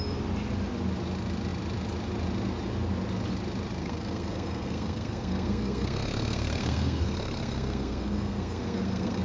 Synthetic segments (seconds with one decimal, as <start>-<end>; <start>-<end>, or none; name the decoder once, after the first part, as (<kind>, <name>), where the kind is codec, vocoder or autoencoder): 3.8-9.2 (codec, SNAC)

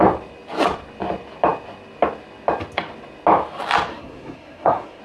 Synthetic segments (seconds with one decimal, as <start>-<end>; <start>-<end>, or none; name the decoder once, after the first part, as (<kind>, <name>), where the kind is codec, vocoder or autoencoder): 3.9-5.0 (codec, SNAC)

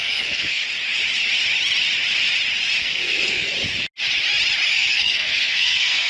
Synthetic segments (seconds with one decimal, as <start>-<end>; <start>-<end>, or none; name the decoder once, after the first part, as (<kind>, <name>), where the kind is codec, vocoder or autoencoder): 0.0-0.6 (codec, SNAC); 2.8-3.5; 4.7-6.1